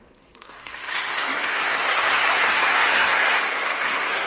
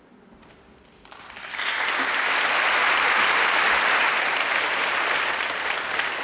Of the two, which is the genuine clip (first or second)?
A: second